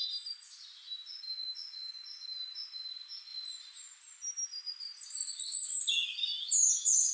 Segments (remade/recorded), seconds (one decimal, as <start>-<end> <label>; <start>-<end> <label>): 0.0-7.1 recorded